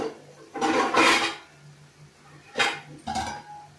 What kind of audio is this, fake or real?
real